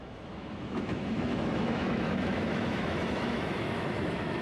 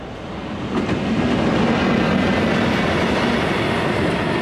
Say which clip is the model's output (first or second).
first